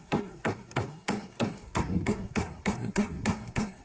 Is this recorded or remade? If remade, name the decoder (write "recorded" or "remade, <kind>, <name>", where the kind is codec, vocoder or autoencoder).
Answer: remade, codec, SNAC